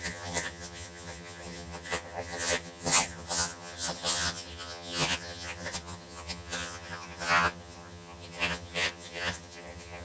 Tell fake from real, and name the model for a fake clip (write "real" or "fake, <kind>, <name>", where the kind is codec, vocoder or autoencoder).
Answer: fake, vocoder, HiFi-GAN